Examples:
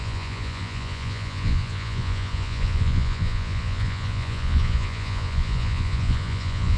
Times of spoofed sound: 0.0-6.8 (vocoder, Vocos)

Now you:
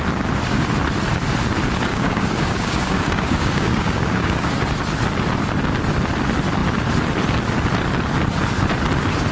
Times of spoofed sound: 1.9-4.5 (codec, DAC)

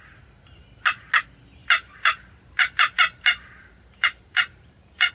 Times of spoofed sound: 1.6-5.1 (vocoder, BigVGAN v2)

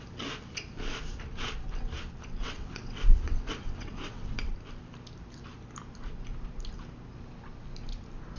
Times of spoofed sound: 2.4-4.5 (vocoder, WaveNeXt)